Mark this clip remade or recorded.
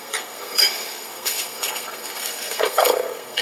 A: remade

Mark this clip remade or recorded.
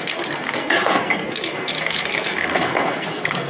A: remade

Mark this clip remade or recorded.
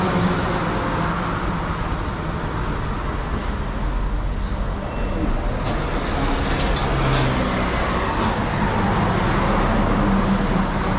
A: recorded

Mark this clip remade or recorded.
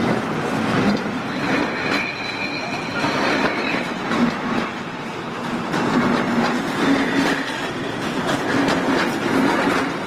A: recorded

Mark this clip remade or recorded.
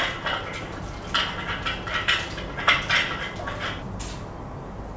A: recorded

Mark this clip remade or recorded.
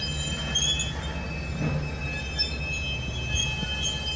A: recorded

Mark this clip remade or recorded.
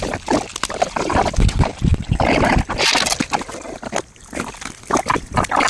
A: recorded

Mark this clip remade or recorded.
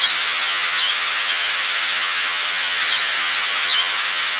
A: remade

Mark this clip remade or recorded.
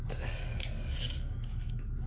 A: remade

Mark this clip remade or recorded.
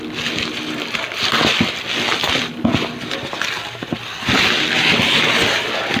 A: recorded